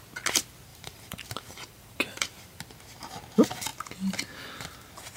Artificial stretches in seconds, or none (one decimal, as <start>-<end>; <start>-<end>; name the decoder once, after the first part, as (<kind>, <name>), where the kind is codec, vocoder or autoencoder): 0.7-2.6 (vocoder, BigVGAN v2)